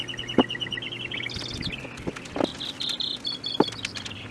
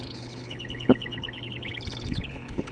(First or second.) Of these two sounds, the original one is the first